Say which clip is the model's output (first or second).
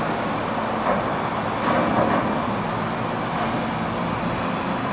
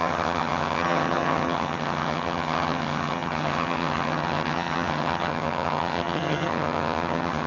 second